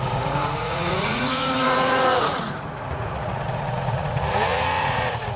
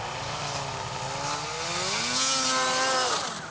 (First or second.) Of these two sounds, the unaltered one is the second